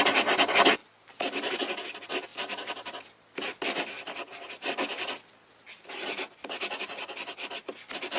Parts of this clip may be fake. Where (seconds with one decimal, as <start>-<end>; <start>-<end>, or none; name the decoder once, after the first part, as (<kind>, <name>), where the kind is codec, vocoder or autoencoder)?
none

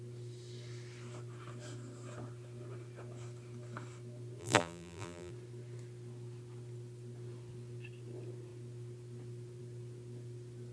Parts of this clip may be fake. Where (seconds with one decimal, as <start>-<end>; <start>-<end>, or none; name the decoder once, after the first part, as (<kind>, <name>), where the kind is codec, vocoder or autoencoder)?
4.4-5.3 (vocoder, BigVGAN v2)

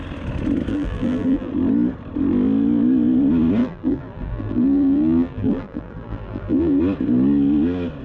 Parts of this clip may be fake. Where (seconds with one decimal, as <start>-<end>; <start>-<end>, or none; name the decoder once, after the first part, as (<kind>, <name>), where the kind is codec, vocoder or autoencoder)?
0.7-1.5 (vocoder, BigVGAN v2); 3.6-6.8

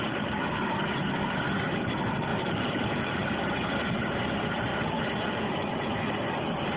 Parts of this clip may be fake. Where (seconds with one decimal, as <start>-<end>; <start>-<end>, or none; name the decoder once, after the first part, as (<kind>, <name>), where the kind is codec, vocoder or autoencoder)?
2.3-3.9 (vocoder, BigVGAN v2)

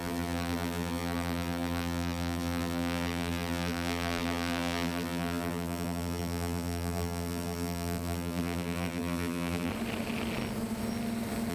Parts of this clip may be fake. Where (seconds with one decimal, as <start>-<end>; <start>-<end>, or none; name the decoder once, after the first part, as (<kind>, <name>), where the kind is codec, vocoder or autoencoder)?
0.0-9.7 (vocoder, BigVGAN v2)

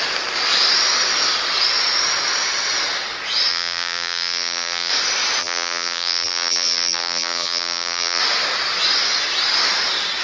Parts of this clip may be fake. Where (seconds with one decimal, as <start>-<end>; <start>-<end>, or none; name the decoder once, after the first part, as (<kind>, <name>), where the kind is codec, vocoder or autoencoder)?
3.5-4.9 (vocoder, BigVGAN v2); 5.4-8.2